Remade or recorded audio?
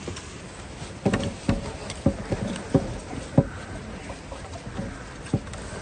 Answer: recorded